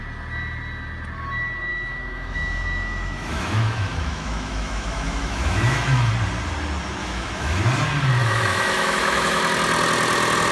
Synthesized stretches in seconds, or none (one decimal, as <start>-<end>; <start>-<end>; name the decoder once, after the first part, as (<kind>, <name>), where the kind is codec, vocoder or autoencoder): 1.7-6.1 (autoencoder, DAC-VAE); 7.0-7.6; 8.2-9.4